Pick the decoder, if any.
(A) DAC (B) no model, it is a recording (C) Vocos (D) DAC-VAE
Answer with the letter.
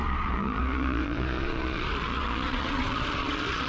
C